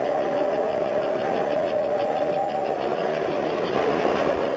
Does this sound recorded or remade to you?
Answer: remade